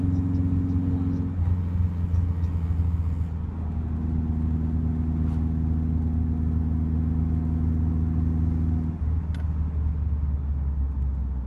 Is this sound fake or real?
real